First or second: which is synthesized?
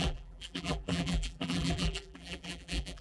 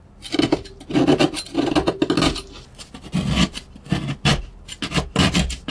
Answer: first